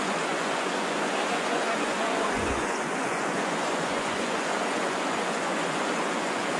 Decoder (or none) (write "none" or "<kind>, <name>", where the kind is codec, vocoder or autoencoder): vocoder, Vocos